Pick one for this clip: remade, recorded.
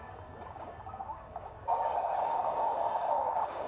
remade